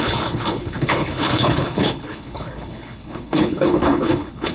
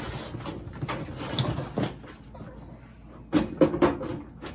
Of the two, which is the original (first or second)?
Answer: second